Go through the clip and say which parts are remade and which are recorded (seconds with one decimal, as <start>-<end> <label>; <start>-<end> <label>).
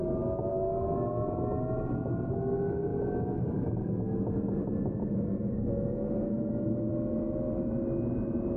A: 0.0-5.0 recorded; 5.0-6.5 remade; 6.5-8.6 recorded